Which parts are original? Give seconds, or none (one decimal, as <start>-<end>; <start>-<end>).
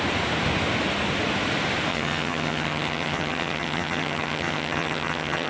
0.0-1.9